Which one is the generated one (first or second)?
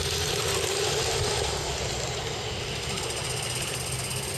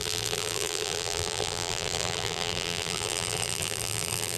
second